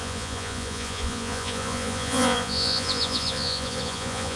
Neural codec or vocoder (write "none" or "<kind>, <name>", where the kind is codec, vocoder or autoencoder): vocoder, Vocos